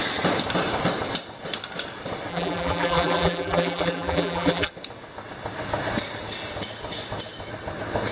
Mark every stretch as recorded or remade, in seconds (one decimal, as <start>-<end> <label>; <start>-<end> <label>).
0.0-2.3 recorded; 2.3-4.7 remade; 4.7-8.1 recorded